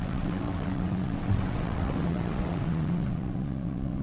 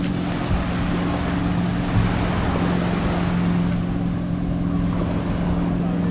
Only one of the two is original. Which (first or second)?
second